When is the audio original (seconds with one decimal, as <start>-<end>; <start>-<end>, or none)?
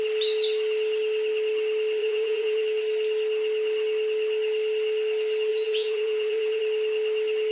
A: 0.0-2.0; 2.6-5.5; 6.6-7.5